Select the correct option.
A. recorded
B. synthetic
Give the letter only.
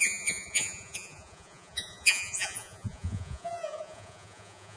B